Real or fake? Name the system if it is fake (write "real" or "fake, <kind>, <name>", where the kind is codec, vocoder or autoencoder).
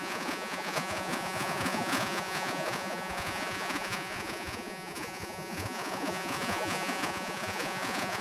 fake, vocoder, Vocos